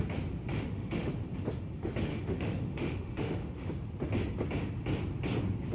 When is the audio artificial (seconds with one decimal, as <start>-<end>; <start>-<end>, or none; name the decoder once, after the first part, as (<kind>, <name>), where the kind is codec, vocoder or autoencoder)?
0.5-1.1 (autoencoder, DAC-VAE); 2.1-3.7